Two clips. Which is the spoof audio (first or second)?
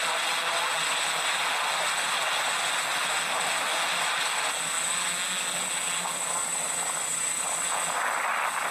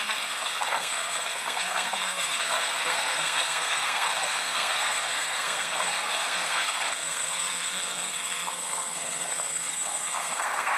second